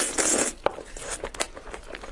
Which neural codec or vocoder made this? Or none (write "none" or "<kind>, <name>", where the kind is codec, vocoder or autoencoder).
vocoder, BigVGAN v2